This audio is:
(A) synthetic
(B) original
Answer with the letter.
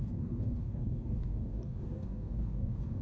A